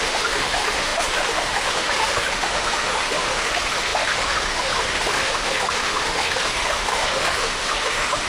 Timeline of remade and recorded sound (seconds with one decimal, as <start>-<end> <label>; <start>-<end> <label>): 0.0-8.3 remade